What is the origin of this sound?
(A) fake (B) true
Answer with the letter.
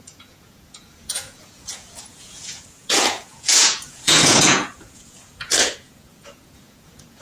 A